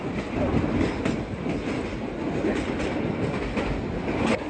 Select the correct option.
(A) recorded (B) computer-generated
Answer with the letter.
A